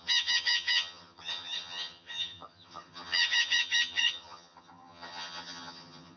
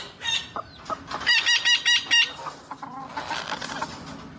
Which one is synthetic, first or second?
first